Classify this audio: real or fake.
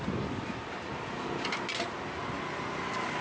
real